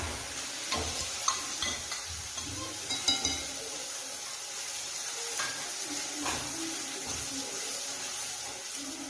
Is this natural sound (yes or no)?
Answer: yes